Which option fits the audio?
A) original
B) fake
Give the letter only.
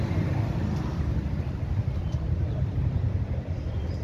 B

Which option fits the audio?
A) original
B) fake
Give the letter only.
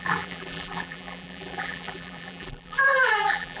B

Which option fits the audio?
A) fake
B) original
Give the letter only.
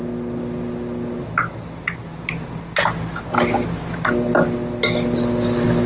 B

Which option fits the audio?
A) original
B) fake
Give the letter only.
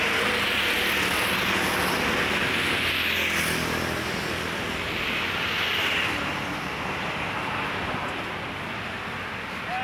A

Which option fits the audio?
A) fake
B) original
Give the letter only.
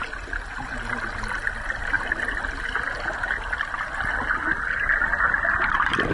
B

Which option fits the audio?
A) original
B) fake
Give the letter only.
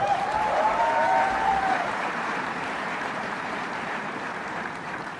B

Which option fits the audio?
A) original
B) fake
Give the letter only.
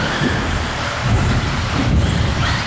B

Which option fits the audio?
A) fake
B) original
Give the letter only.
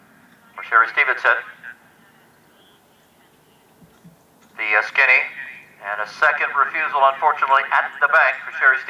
B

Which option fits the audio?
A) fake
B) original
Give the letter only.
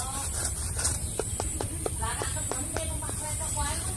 A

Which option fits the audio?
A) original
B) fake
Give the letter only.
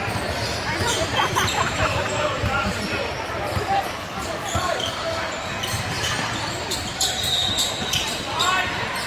B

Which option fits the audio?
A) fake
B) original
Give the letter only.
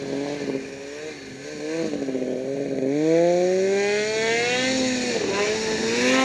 B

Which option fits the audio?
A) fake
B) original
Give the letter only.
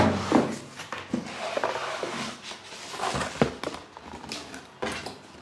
B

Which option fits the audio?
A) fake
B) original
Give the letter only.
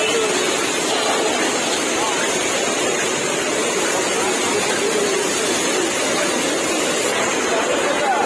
B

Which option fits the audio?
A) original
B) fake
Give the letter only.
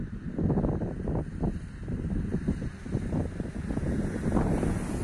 A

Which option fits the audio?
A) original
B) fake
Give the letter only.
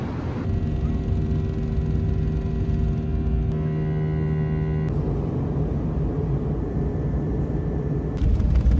A